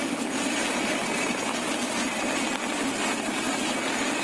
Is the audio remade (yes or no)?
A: no